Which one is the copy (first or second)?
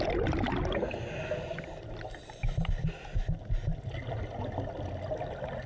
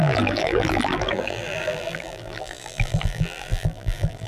second